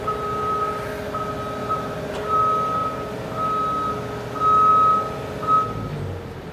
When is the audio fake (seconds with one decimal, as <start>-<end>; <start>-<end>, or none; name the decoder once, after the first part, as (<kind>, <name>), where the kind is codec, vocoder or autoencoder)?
0.0-0.9 (vocoder, BigVGAN v2); 1.6-2.4